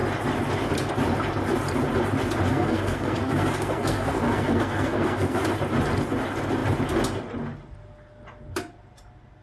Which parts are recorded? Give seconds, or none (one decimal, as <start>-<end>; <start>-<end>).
0.0-2.5; 5.4-9.4